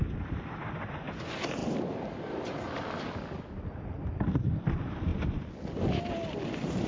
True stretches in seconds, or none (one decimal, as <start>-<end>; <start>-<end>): 0.0-6.9